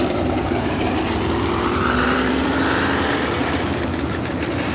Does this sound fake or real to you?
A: fake